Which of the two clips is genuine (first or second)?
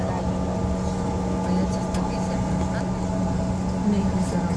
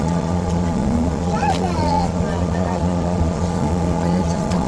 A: first